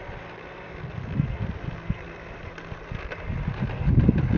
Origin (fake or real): real